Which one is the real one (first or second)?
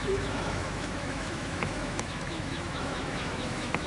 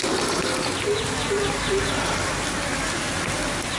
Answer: second